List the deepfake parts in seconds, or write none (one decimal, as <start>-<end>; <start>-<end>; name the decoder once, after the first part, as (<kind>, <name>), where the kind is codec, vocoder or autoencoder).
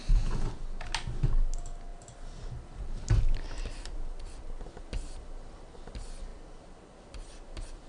6.3-7.9 (vocoder, BigVGAN v2)